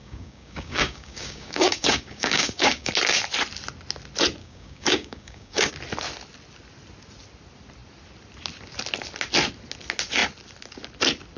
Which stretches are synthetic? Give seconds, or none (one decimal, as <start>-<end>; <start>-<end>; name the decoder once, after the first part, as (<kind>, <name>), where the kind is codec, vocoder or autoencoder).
0.0-2.9 (codec, DAC); 4.4-5.7